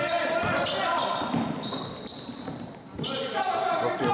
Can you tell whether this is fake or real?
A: real